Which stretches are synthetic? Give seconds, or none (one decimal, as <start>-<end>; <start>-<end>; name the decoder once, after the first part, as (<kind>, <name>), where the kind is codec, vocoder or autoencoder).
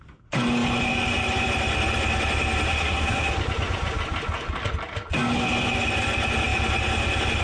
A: 2.7-3.3 (codec, SNAC)